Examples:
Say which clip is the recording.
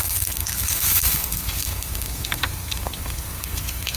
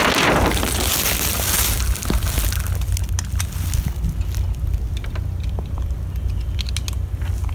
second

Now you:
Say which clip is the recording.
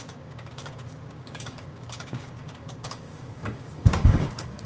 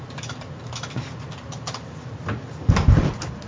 second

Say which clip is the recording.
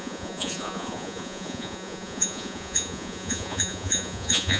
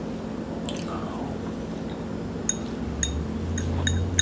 second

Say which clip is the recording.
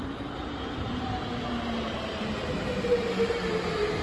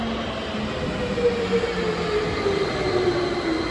second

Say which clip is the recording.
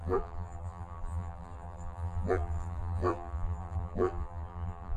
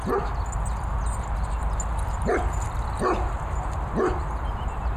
second